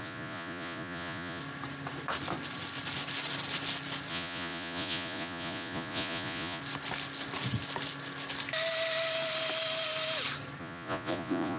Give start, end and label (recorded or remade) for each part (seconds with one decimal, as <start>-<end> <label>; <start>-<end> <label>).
0.0-1.4 remade; 1.4-4.1 recorded; 4.1-6.6 remade; 6.6-10.6 recorded; 10.6-11.6 remade